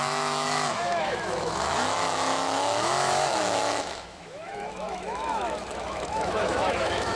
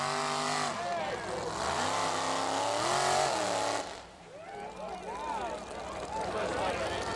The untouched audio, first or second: second